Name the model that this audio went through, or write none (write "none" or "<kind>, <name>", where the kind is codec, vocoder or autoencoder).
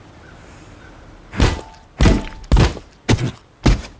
none